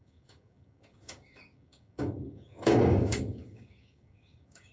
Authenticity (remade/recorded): remade